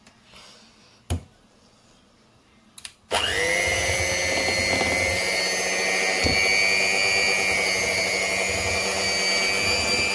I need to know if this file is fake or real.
real